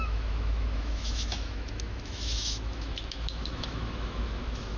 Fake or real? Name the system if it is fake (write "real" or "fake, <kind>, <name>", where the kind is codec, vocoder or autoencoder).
fake, autoencoder, DAC-VAE